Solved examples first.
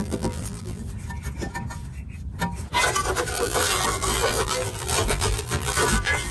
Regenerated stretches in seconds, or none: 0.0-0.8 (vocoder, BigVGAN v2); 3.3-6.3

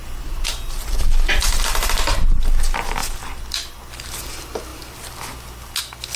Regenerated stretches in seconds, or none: 0.0-1.6 (vocoder, BigVGAN v2); 3.0-4.0

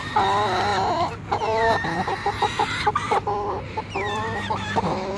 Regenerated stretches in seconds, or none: 0.7-3.8 (vocoder, BigVGAN v2)

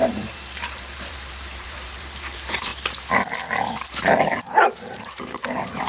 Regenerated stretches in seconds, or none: 0.0-2.7 (vocoder, BigVGAN v2); 4.4-5.9